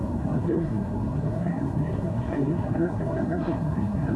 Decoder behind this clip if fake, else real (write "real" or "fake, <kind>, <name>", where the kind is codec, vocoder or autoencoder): fake, codec, SNAC